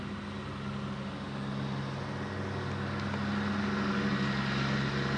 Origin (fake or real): real